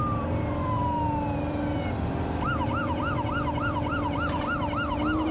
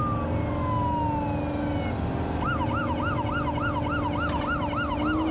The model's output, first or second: first